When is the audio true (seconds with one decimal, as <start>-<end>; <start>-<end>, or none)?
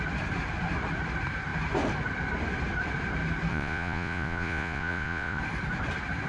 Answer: 0.0-3.5; 5.4-6.3